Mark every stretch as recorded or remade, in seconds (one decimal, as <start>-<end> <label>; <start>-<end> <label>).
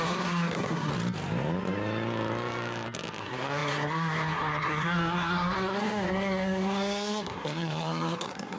0.0-0.9 remade; 0.9-3.2 recorded; 3.2-8.6 remade